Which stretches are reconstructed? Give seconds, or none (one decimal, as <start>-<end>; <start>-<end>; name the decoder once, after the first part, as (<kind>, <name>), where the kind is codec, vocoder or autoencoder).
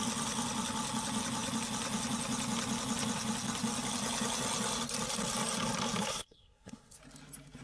6.1-7.0 (codec, SNAC)